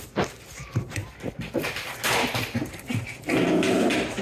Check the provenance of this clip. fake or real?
real